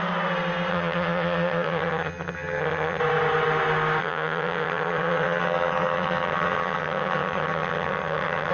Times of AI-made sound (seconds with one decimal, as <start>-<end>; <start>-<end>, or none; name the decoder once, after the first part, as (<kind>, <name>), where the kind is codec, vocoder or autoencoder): 0.7-3.0 (vocoder, HiFi-GAN); 4.0-8.5

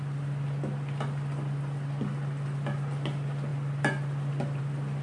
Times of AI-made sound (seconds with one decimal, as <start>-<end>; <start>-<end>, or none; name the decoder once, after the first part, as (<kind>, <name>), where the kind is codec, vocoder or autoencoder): none

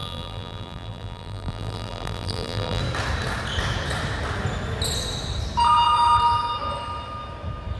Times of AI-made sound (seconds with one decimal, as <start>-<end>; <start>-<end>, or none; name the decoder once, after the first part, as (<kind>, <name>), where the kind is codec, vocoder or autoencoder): 0.0-2.8 (vocoder, BigVGAN v2)

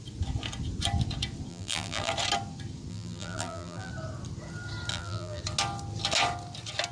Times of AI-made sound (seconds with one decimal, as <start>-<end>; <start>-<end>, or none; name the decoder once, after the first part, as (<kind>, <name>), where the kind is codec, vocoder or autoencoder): 1.5-2.1 (vocoder, BigVGAN v2); 2.9-3.9; 4.9-5.4